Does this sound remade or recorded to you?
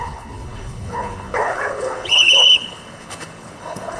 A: remade